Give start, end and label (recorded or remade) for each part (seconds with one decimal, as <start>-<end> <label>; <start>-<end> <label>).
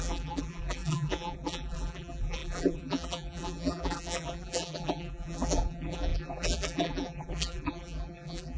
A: 0.0-8.6 remade